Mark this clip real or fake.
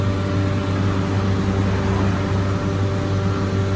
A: real